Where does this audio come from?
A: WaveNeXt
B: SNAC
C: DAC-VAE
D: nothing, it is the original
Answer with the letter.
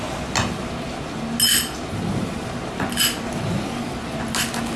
D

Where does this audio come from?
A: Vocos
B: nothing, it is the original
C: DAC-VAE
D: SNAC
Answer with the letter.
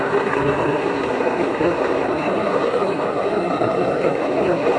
D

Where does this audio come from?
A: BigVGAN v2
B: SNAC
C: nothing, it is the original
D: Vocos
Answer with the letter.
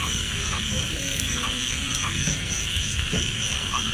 B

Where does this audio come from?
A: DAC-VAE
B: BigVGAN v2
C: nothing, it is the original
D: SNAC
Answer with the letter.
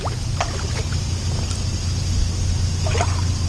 C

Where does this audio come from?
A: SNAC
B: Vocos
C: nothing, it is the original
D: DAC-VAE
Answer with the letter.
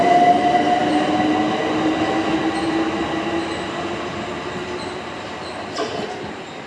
C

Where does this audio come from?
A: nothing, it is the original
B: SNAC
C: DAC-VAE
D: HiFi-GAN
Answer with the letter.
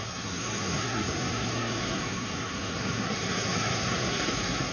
B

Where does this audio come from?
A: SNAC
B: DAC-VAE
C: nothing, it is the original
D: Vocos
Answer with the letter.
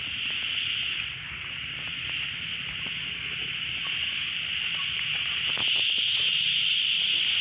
C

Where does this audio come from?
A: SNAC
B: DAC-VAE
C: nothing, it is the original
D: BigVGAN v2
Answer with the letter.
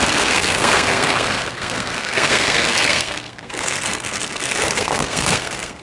A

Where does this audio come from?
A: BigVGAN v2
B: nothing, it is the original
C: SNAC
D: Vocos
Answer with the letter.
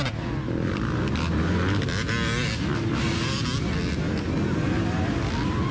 B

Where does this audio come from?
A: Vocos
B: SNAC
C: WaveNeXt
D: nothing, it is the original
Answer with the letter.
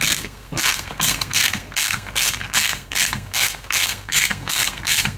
B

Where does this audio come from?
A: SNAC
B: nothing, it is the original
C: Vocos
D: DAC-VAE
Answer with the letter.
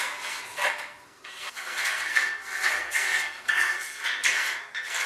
A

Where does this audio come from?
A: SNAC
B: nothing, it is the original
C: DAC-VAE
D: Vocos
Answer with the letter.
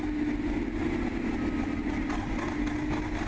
B